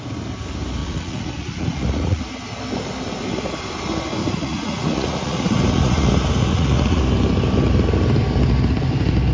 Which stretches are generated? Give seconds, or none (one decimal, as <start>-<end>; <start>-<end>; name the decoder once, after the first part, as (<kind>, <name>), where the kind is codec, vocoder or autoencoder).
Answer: 0.8-2.2 (vocoder, Vocos); 4.2-6.1; 6.5-7.0